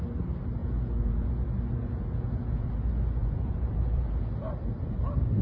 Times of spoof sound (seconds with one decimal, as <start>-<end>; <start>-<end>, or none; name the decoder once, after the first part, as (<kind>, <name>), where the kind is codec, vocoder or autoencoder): 0.6-1.3 (vocoder, Vocos); 1.8-2.7; 3.2-4.3